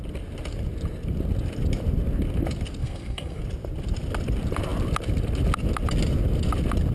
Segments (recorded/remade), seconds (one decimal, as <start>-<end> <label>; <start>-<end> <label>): 0.0-2.8 recorded; 2.8-3.4 remade; 3.4-6.9 recorded